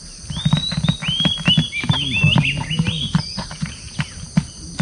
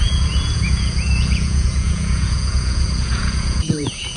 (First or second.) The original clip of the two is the first